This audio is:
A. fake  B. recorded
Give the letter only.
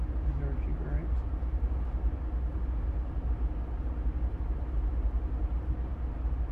B